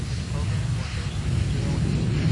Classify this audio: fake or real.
real